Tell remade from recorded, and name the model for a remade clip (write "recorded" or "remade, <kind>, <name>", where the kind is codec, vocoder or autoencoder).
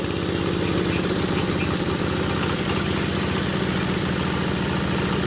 recorded